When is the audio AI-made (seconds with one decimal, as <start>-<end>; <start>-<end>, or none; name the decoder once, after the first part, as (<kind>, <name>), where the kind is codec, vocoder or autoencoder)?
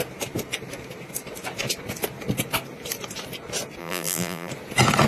3.8-4.5 (vocoder, BigVGAN v2)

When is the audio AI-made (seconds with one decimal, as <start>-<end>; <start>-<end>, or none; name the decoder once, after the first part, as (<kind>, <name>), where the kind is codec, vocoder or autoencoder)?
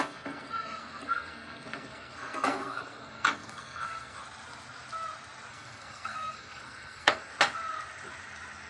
0.0-4.2 (codec, SNAC); 5.5-7.3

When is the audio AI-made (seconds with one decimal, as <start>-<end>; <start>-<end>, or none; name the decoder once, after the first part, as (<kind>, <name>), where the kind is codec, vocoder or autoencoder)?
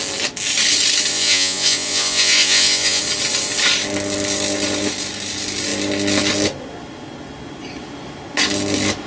1.1-3.0 (vocoder, Vocos)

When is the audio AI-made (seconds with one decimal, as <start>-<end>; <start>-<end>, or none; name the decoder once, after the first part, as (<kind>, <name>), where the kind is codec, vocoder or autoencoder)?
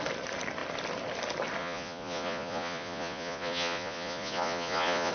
1.6-5.1 (vocoder, Vocos)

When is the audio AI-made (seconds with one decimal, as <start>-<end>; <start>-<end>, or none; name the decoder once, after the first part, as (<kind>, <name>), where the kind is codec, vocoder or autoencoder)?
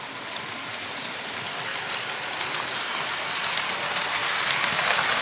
1.7-2.4 (vocoder, BigVGAN v2)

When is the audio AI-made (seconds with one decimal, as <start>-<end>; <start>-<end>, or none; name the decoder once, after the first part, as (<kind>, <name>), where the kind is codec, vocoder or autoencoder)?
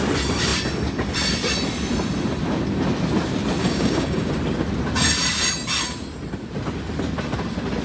3.6-4.3 (codec, DAC)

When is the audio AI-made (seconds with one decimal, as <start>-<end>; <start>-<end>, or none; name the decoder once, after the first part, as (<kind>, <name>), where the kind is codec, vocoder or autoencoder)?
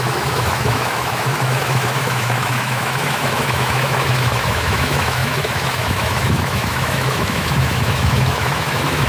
0.0-9.1 (autoencoder, DAC-VAE)